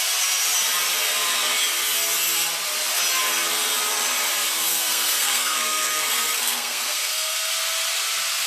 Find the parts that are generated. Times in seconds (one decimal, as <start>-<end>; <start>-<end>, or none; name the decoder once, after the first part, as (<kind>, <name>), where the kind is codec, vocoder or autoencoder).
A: 4.7-7.5 (codec, SNAC)